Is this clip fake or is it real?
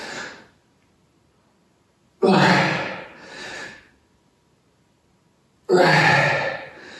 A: real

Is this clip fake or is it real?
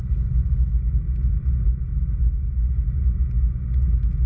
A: real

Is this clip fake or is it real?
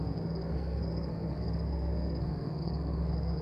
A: fake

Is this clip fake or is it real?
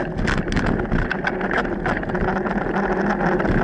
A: real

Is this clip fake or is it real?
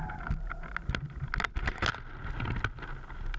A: real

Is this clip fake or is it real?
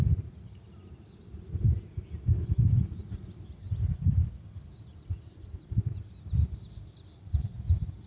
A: real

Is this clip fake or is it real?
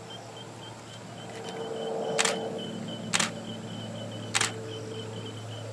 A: real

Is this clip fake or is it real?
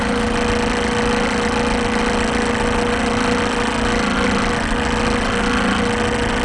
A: real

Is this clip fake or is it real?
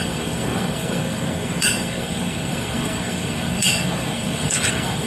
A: fake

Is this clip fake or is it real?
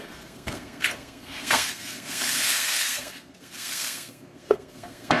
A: fake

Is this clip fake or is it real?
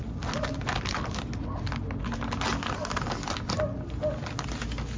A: real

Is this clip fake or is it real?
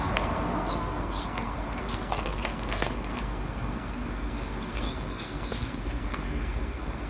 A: fake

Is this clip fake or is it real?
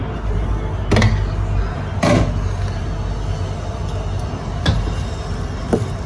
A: real